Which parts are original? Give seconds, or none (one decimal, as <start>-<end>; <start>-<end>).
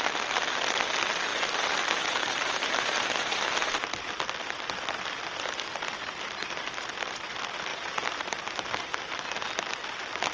0.0-1.3; 3.4-7.7; 8.3-10.3